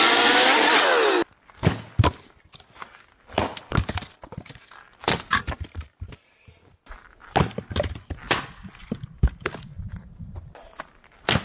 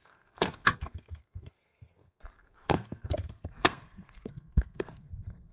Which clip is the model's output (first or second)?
second